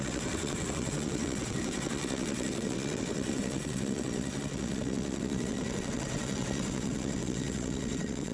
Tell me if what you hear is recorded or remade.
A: remade